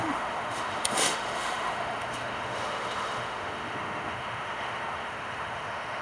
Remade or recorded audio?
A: remade